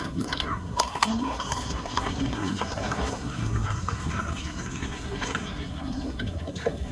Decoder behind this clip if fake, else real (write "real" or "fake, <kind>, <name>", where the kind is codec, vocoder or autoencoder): fake, codec, SNAC